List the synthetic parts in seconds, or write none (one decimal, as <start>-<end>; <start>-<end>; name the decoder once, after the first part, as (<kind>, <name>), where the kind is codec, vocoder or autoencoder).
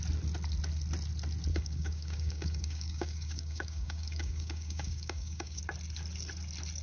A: 1.5-5.6 (codec, DAC)